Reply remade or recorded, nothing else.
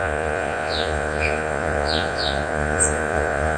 remade